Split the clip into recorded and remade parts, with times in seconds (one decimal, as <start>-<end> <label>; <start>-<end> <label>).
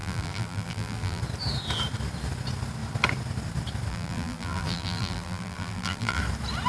0.0-1.2 remade; 1.2-3.9 recorded; 3.9-6.2 remade; 6.2-6.7 recorded